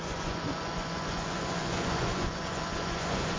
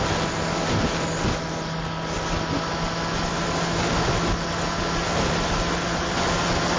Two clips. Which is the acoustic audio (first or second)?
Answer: second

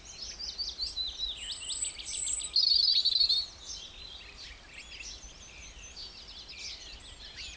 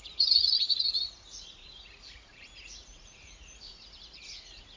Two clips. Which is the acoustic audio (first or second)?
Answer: first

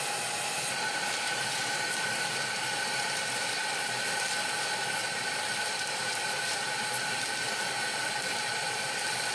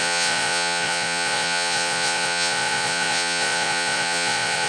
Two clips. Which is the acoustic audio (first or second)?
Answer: first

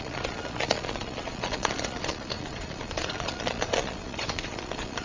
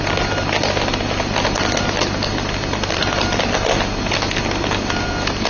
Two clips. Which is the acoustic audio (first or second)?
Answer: second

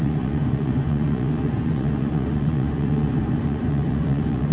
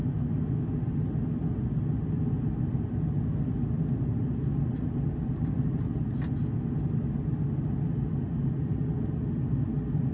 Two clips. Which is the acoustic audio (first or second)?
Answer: second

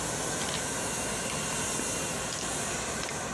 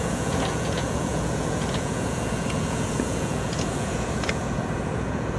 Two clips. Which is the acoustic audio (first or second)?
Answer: first